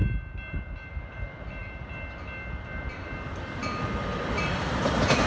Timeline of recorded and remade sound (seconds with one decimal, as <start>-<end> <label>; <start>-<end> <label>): 0.0-5.3 recorded